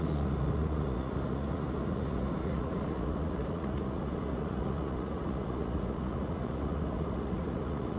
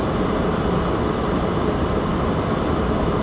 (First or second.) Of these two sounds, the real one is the second